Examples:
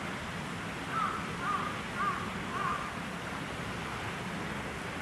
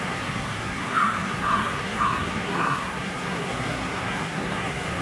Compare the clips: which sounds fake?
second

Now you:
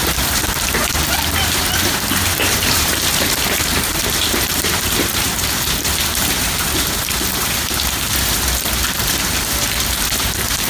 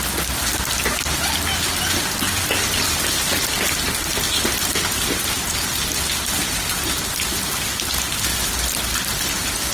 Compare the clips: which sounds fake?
first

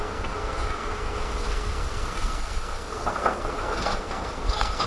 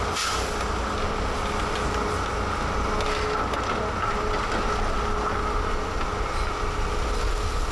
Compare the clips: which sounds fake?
first